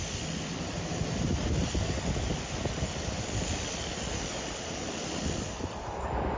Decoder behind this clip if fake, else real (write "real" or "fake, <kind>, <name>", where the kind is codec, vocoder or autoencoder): real